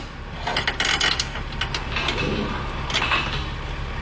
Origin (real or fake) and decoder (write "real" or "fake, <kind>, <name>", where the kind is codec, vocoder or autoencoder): real